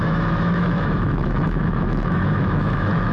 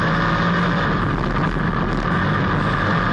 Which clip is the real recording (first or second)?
second